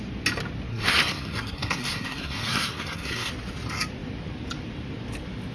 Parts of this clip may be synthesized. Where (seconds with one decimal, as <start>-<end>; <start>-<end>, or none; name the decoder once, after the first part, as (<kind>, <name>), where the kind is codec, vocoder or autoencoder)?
0.7-3.3 (codec, SNAC)